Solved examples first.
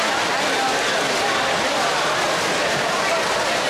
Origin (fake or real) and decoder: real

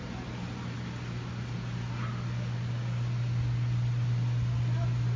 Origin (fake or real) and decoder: real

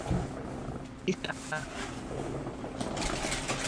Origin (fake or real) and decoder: real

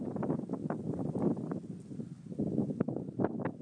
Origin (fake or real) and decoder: real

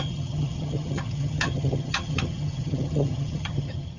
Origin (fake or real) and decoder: fake, vocoder, HiFi-GAN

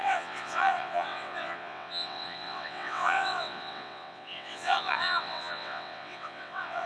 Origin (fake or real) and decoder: fake, vocoder, WaveNeXt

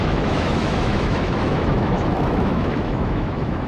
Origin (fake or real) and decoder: fake, autoencoder, DAC-VAE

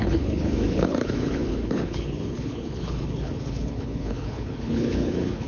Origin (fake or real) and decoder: fake, codec, HILCodec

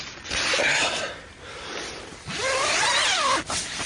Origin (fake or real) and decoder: real